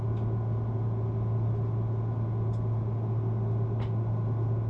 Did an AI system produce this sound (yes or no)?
no